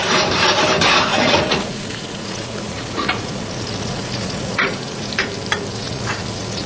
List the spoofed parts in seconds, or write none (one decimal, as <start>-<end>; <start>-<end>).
1.1-5.1; 5.7-6.7